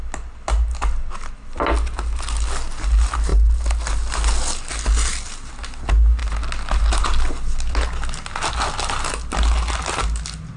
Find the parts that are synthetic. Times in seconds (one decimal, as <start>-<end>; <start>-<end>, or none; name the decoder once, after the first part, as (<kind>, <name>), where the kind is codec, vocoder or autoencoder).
none